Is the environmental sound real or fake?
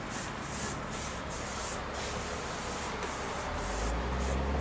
real